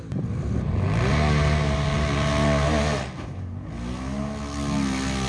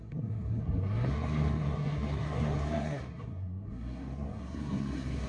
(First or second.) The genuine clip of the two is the first